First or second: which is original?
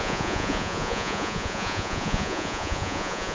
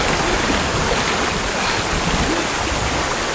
second